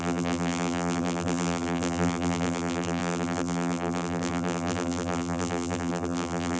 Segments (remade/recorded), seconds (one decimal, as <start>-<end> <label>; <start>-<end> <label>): 0.0-6.6 remade